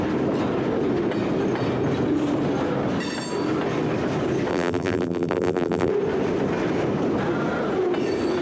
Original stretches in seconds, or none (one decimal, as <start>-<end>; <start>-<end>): 0.0-4.5; 5.9-8.4